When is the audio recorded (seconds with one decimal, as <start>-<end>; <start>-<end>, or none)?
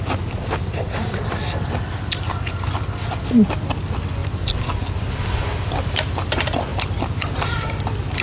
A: 0.0-4.2; 5.1-6.7